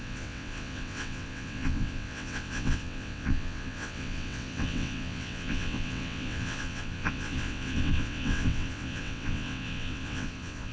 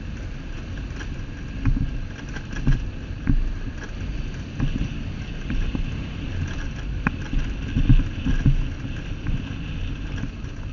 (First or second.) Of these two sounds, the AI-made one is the first